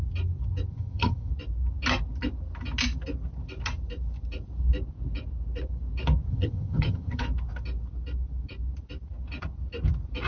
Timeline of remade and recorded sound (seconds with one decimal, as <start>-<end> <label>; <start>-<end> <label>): 0.0-0.7 recorded; 0.7-1.3 remade; 1.3-6.3 recorded; 6.3-7.2 remade; 7.2-10.3 recorded